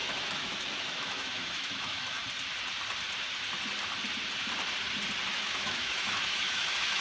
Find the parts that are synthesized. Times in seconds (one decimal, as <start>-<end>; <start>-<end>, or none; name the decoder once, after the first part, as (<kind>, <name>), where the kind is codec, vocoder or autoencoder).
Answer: 0.0-2.2 (autoencoder, DAC-VAE); 5.3-7.0